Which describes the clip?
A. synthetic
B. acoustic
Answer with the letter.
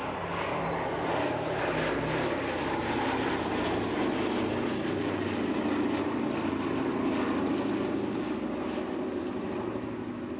B